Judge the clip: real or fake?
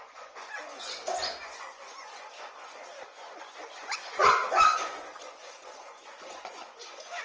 fake